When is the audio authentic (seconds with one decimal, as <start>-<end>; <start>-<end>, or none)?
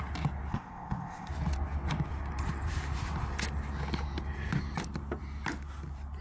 0.0-0.5; 1.3-6.2